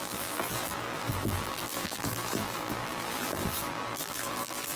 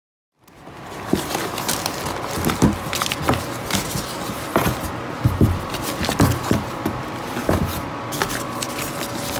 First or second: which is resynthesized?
first